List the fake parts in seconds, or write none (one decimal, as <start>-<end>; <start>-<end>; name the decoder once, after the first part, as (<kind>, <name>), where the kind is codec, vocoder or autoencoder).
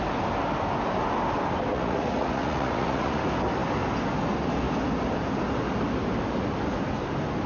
1.7-3.2 (vocoder, Vocos)